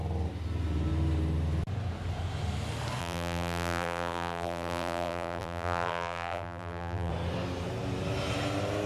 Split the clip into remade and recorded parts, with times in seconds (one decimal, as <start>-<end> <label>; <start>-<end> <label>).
0.0-3.0 recorded; 3.0-7.1 remade; 7.1-8.9 recorded